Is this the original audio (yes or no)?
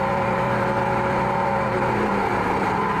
no